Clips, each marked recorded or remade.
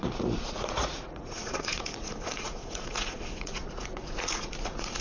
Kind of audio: remade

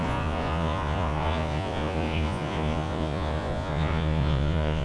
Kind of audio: remade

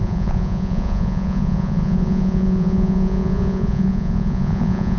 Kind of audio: remade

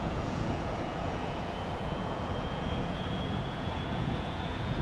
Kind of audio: remade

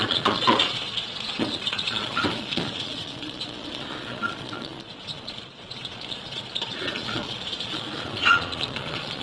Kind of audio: remade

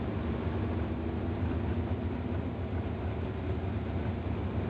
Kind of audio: recorded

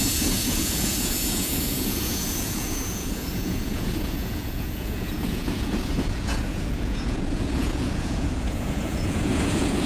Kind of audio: remade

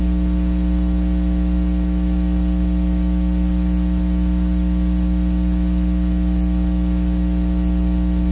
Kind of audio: recorded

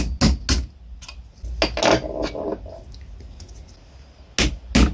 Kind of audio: recorded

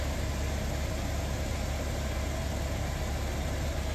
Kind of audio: recorded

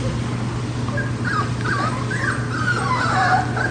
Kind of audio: recorded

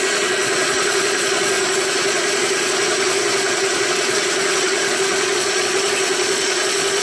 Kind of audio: remade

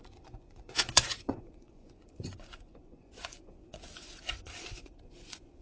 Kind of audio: remade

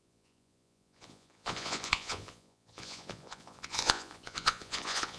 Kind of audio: remade